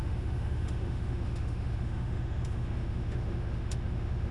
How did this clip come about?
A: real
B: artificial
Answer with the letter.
B